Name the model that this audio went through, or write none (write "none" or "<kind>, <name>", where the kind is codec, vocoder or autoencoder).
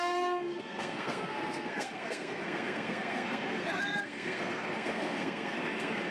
codec, SNAC